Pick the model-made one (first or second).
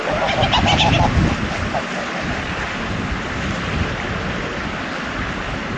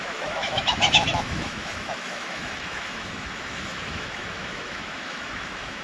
second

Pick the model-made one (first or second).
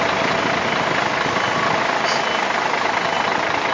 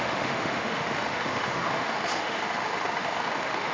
second